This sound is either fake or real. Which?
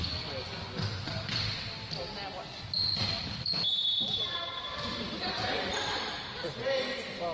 real